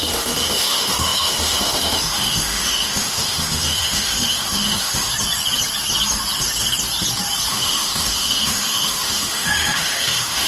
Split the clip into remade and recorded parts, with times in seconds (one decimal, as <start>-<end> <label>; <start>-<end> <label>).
0.0-5.1 remade; 5.1-7.5 recorded; 7.5-10.5 remade